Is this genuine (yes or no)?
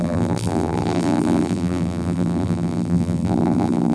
no